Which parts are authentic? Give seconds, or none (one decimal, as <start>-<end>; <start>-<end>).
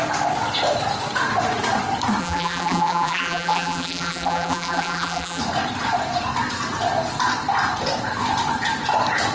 0.0-2.2; 5.4-9.3